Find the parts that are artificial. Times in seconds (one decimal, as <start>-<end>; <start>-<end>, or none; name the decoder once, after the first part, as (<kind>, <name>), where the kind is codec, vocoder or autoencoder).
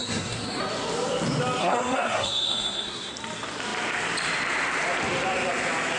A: 0.0-0.6 (codec, SNAC); 1.6-3.1